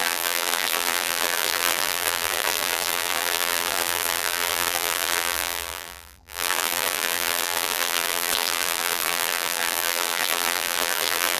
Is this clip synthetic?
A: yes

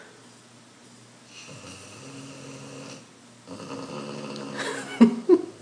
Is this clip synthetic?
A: no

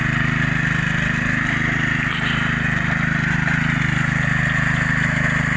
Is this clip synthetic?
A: no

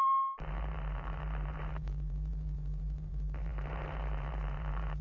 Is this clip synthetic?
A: yes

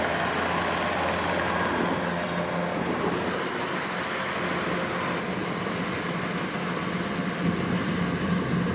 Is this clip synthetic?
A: no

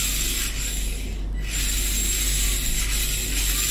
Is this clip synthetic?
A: no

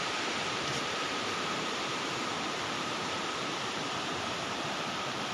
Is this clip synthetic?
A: yes